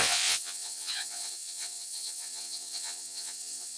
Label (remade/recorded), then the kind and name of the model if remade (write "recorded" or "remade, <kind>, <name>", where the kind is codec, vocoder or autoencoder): remade, vocoder, WaveNeXt